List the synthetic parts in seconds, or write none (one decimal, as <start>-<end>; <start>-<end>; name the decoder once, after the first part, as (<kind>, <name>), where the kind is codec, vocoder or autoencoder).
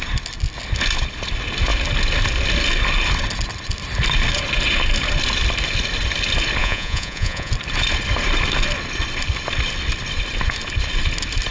6.6-7.5 (vocoder, Vocos)